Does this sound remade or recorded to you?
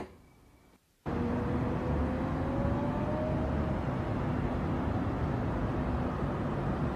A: recorded